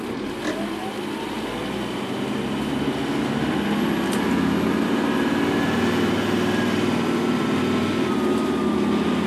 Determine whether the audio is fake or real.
real